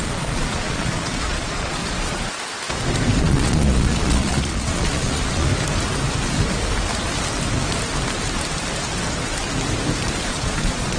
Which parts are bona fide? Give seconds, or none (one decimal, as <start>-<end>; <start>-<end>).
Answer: 1.8-3.2; 5.5-10.3